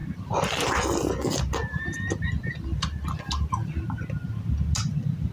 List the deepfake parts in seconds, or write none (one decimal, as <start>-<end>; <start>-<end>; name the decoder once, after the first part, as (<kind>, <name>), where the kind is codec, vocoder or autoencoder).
none